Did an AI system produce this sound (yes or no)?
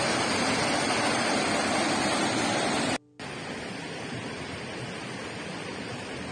no